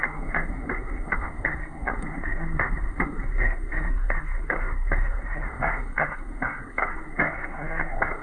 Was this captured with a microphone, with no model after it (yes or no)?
no